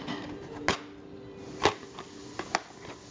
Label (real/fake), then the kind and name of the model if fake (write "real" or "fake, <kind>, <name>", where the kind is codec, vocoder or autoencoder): real